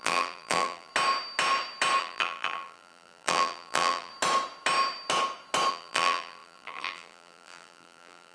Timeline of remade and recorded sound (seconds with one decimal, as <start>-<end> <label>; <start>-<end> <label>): 0.0-0.9 remade; 0.9-2.0 recorded; 2.0-4.1 remade; 4.1-5.7 recorded; 5.7-8.3 remade